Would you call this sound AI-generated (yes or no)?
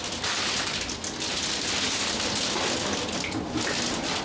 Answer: no